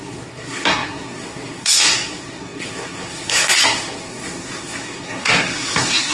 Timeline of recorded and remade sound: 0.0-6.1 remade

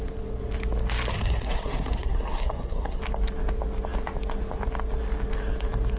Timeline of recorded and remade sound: 0.0-1.1 recorded; 1.1-3.0 remade; 3.0-6.0 recorded

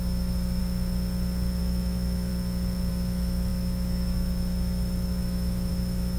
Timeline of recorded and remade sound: 0.0-0.6 remade; 0.6-1.6 recorded; 1.6-2.3 remade; 2.3-2.9 recorded; 2.9-6.2 remade

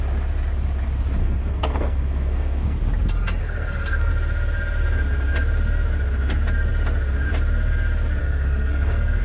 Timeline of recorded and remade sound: 0.0-1.2 recorded; 1.2-2.8 remade; 2.8-3.4 recorded; 3.4-4.1 remade; 4.1-8.2 recorded; 8.2-9.2 remade

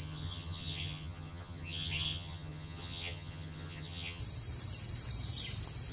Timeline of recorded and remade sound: 0.0-4.2 remade; 4.2-5.9 recorded

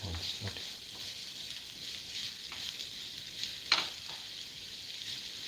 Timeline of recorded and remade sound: 0.0-5.5 recorded

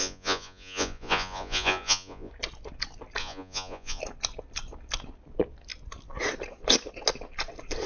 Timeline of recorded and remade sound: 0.0-2.3 remade; 2.3-3.2 recorded; 3.2-4.0 remade; 4.0-7.9 recorded